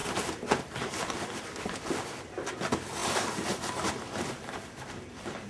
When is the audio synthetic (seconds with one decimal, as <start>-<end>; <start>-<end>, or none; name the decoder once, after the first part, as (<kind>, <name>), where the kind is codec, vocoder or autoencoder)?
none